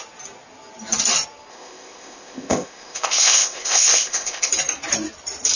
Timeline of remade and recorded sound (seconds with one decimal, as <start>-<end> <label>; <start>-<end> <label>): 0.0-1.5 recorded; 1.5-4.5 remade; 4.5-5.6 recorded